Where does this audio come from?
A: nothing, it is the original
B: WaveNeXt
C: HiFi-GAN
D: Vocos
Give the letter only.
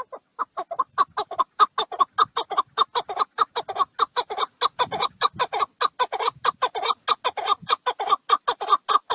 A